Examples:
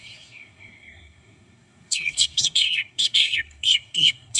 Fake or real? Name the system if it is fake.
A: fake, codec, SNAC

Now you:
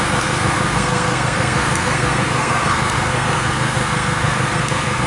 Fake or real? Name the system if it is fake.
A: fake, codec, SNAC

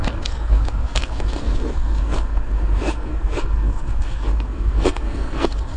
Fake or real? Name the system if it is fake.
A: fake, codec, SNAC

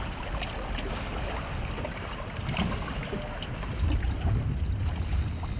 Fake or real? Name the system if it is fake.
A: real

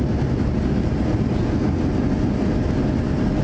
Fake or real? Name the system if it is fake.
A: real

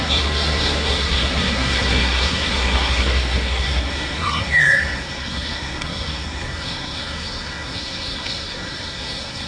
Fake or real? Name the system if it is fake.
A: fake, codec, SNAC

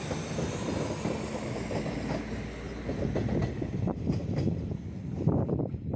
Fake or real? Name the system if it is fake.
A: real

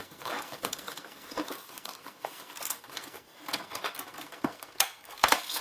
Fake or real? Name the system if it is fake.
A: fake, codec, SNAC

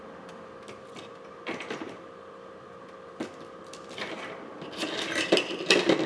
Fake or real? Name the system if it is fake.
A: real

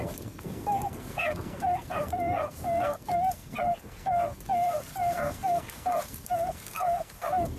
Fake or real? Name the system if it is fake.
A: fake, codec, SNAC